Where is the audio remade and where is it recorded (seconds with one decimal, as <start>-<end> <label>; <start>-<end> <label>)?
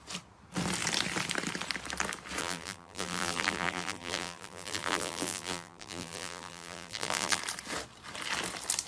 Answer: 0.0-2.4 recorded; 2.4-7.4 remade; 7.4-8.9 recorded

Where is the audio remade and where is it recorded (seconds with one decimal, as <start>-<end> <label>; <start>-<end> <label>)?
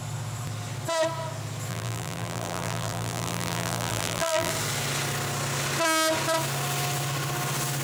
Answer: 0.0-1.7 recorded; 1.7-4.5 remade; 4.5-7.8 recorded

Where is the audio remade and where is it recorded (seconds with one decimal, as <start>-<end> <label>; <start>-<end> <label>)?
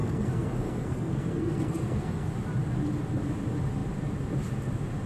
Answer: 0.0-2.3 remade; 2.3-5.1 recorded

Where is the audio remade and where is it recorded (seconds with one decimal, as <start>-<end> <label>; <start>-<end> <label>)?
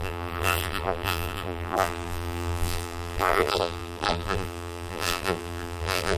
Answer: 0.0-6.2 remade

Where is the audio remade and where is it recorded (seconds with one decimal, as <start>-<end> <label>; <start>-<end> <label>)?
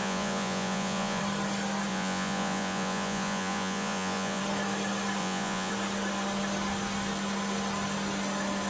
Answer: 0.0-1.2 remade; 1.2-1.9 recorded; 1.9-4.4 remade; 4.4-5.2 recorded; 5.2-5.7 remade; 5.7-8.7 recorded